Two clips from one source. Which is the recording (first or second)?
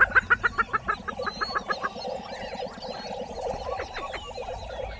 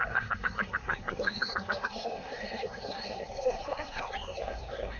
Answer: first